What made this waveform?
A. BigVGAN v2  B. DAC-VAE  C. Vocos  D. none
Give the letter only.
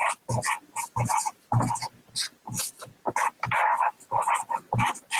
D